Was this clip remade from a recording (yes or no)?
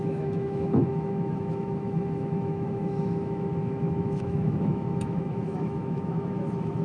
yes